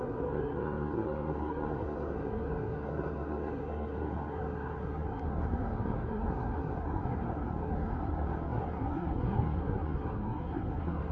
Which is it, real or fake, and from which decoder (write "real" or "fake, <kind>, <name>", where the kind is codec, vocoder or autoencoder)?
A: fake, codec, SNAC